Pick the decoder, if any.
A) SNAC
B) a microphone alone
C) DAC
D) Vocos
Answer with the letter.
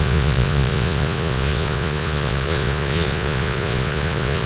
D